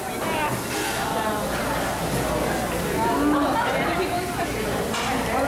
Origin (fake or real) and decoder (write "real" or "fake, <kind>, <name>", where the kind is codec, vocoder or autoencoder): real